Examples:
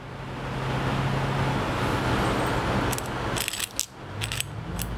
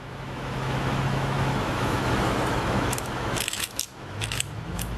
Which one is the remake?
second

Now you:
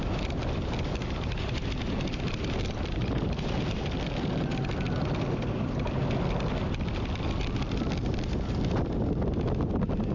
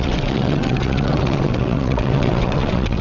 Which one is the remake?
second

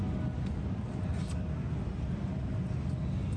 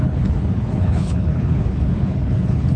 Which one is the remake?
second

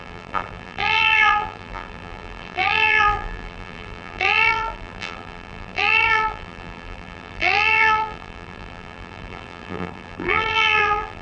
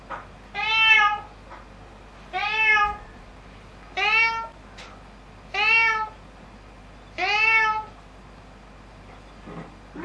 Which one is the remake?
first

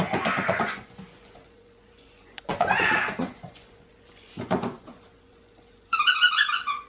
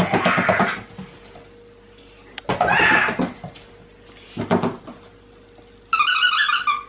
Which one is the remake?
first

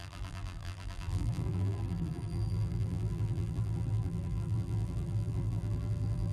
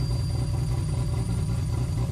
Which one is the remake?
first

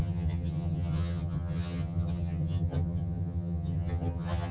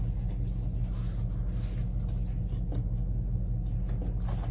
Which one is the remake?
first